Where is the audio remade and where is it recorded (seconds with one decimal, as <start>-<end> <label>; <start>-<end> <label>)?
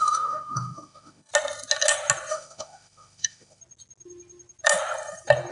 0.0-1.3 remade; 1.3-2.3 recorded; 2.3-3.6 remade; 3.6-5.5 recorded